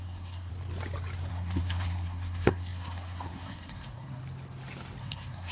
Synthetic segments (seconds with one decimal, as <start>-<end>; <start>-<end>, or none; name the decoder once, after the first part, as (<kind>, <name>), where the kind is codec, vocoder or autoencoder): 0.0-0.5 (codec, SNAC); 1.3-4.2; 5.0-5.5